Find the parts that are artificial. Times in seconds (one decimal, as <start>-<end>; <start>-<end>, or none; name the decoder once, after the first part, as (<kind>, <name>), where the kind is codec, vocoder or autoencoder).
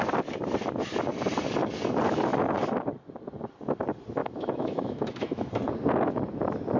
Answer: 4.2-5.5 (autoencoder, DAC-VAE)